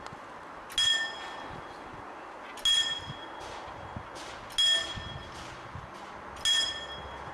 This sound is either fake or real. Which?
real